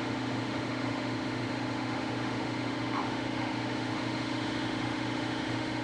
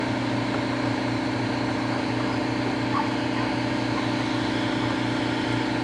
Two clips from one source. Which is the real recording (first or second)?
second